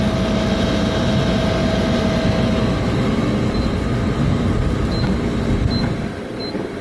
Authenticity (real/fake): real